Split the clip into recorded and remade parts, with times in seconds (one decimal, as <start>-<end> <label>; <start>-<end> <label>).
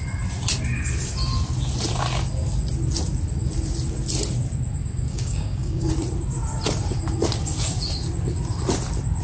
0.0-5.1 recorded; 5.1-5.9 remade; 5.9-9.2 recorded